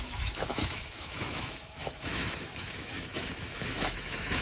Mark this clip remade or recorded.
remade